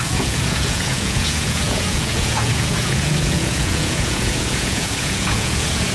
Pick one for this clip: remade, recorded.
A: remade